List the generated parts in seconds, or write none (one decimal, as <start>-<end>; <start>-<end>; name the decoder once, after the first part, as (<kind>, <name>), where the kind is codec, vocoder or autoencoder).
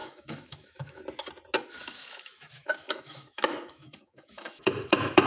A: 0.0-1.0 (autoencoder, DAC-VAE); 1.8-5.3